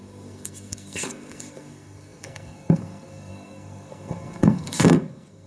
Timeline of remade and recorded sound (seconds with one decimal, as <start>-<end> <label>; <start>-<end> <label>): 0.0-5.5 remade